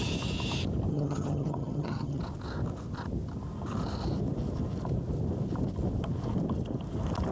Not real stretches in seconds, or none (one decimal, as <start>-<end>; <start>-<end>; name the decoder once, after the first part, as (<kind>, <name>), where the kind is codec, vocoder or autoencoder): 0.9-2.2 (vocoder, HiFi-GAN)